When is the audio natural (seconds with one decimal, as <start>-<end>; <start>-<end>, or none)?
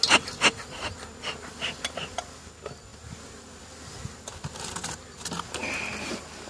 0.0-6.5